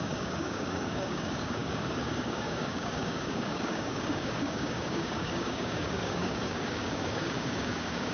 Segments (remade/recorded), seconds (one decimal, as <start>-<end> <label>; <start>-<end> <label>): 0.0-8.1 remade